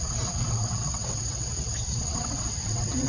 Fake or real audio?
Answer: fake